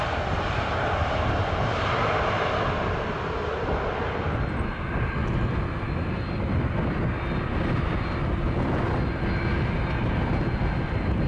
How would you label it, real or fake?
real